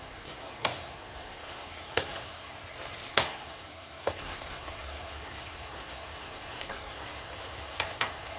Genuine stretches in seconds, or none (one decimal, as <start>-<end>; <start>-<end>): 2.6-3.1